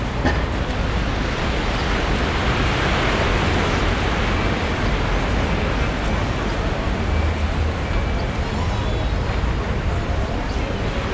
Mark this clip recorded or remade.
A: recorded